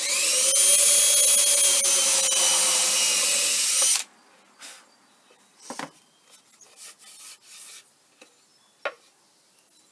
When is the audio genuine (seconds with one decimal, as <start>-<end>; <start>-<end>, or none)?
0.0-9.9

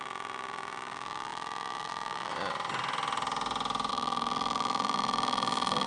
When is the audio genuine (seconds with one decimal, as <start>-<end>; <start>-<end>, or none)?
2.3-3.9